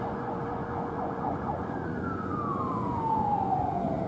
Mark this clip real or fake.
fake